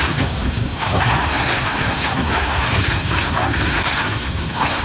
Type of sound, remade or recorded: remade